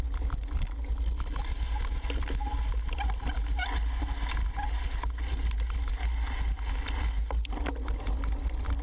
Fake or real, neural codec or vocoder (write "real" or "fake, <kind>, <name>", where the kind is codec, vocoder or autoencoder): real